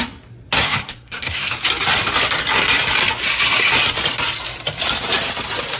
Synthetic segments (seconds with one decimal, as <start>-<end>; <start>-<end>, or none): 0.6-1.5